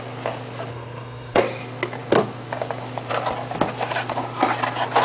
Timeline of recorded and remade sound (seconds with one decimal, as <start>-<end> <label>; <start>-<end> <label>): 0.0-0.7 recorded; 0.7-1.4 remade; 1.4-5.0 recorded